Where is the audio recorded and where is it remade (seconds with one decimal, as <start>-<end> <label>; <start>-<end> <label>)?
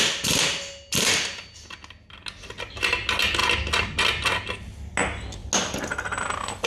0.0-6.7 recorded